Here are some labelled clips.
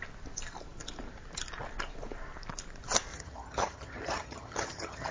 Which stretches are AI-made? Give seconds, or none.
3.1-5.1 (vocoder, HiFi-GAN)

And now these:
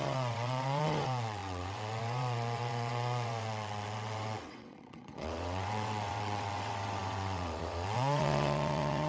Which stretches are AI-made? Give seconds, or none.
0.0-9.1 (vocoder, WaveNeXt)

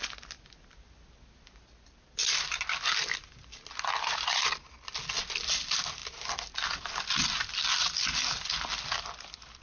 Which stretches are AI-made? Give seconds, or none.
none

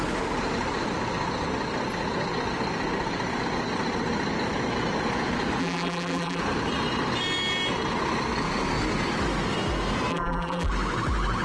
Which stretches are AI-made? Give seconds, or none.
5.6-6.4 (vocoder, BigVGAN v2); 10.1-10.7

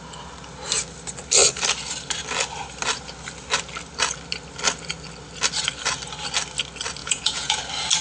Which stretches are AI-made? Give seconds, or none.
7.0-7.6 (vocoder, Vocos)

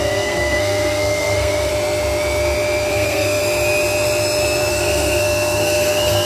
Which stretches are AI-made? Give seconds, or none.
0.0-1.7 (codec, SNAC); 2.9-3.4; 4.7-6.3

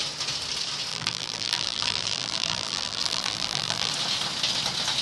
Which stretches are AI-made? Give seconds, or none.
0.9-3.9 (vocoder, BigVGAN v2)